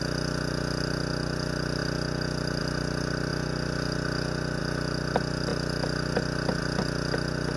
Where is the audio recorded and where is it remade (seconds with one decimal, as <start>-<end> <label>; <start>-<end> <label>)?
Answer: 0.0-7.6 recorded